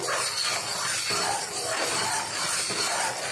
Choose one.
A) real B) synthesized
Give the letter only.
A